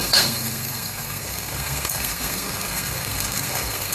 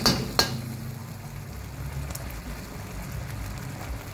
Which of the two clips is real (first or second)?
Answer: second